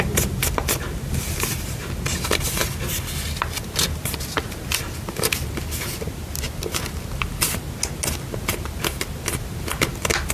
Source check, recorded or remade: recorded